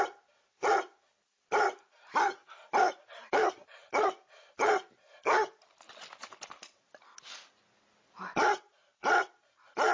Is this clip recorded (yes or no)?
yes